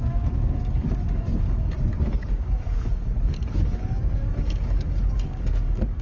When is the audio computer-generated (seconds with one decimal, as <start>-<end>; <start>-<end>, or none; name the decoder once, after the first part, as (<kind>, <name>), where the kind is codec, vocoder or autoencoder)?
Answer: 0.0-6.0 (codec, DAC)